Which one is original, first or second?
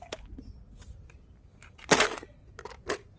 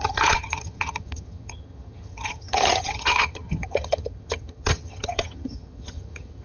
first